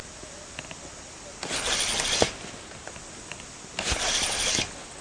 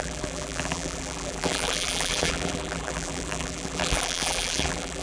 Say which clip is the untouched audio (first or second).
first